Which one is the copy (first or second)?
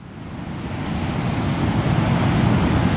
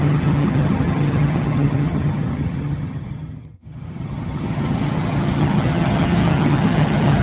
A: second